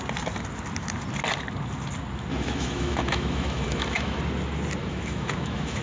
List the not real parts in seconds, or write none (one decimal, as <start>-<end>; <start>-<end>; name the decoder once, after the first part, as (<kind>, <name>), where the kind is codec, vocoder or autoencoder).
2.3-4.2 (autoencoder, DAC-VAE); 4.8-5.8